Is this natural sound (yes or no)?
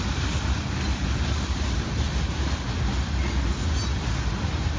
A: yes